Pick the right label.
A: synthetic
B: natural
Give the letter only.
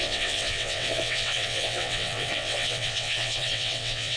A